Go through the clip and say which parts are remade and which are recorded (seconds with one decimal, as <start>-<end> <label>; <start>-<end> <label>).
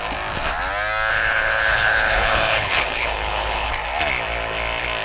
0.0-1.1 recorded; 1.1-3.7 remade; 3.7-5.0 recorded